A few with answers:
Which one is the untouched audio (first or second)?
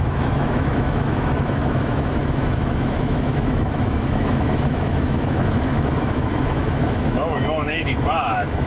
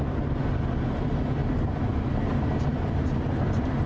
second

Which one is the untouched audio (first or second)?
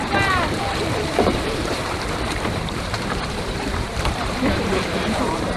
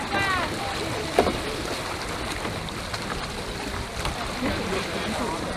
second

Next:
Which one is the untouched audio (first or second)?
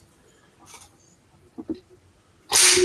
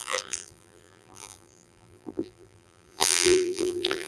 first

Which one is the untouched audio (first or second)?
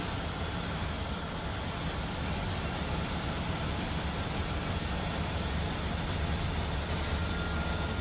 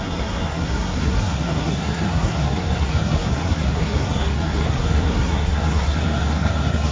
first